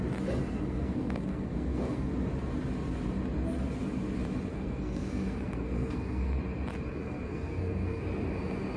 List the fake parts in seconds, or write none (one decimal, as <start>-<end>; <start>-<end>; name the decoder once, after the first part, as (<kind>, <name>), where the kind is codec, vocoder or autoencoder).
0.4-2.1 (codec, SNAC); 4.5-6.4; 6.9-8.0